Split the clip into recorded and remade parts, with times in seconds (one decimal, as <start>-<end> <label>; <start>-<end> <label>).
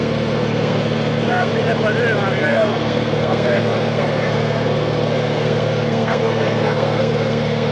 0.0-1.5 remade; 1.5-2.4 recorded; 2.4-7.7 remade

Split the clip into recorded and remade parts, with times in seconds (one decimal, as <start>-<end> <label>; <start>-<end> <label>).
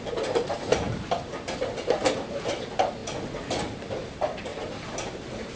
0.0-4.5 recorded; 4.5-5.6 remade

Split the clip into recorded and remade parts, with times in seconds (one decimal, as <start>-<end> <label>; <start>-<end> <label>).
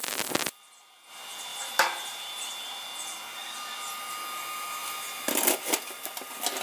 0.0-1.5 recorded; 1.5-2.5 remade; 2.5-6.6 recorded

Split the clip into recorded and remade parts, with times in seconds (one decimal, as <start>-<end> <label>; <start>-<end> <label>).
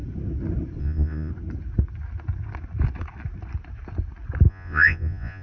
0.0-0.8 recorded; 0.8-1.3 remade; 1.3-4.5 recorded; 4.5-5.4 remade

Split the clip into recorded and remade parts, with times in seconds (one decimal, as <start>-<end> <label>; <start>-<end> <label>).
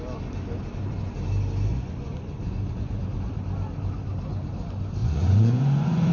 0.0-1.7 recorded; 1.7-3.3 remade; 3.3-5.0 recorded; 5.0-6.1 remade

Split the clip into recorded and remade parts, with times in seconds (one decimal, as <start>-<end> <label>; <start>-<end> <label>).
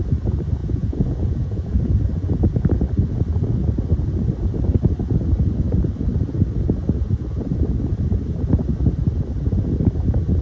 0.0-0.6 recorded; 0.6-1.8 remade; 1.8-10.4 recorded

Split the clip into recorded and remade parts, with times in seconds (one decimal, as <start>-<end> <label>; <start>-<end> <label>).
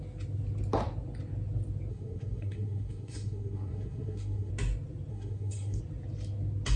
0.0-1.9 recorded; 1.9-4.5 remade; 4.5-5.1 recorded; 5.1-5.8 remade; 5.8-6.8 recorded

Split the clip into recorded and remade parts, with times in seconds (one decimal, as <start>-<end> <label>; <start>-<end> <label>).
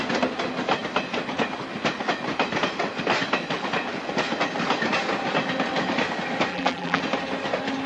0.0-6.5 recorded; 6.5-7.0 remade; 7.0-7.9 recorded